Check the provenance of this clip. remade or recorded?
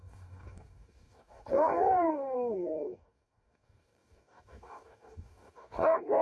remade